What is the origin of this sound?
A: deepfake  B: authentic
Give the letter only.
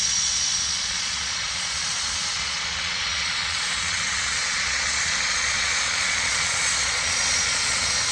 A